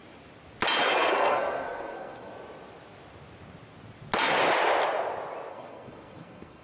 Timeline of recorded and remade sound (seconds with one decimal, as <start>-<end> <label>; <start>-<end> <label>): 0.0-0.8 recorded; 0.8-2.3 remade; 2.3-5.5 recorded; 5.5-6.6 remade